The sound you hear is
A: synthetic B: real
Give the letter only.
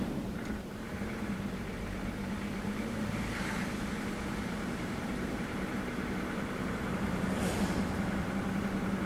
A